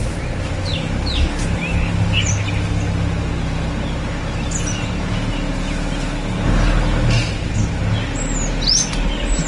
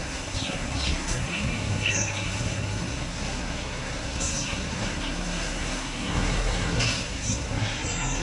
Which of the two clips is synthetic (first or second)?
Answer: second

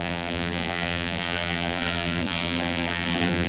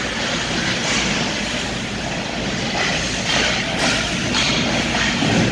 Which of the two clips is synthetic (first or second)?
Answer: first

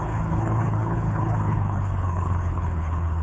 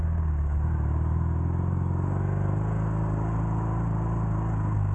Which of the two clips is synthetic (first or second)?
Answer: first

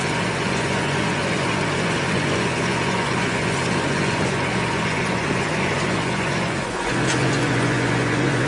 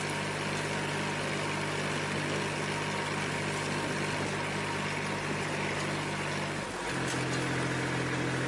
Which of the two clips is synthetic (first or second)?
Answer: first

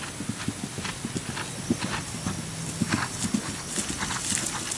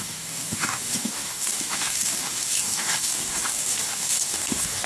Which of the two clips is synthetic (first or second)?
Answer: second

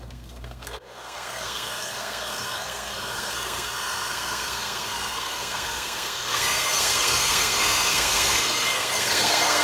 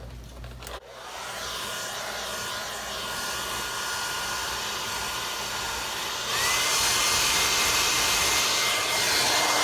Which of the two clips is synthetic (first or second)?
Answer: first